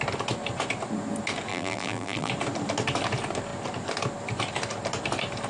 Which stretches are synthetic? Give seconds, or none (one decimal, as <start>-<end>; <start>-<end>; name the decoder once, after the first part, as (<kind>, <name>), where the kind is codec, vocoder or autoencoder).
1.5-2.3 (vocoder, BigVGAN v2)